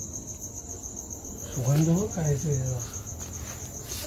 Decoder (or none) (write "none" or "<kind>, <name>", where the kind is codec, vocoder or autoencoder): none